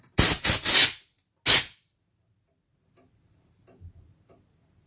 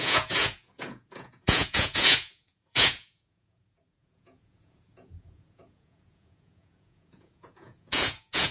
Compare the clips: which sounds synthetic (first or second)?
second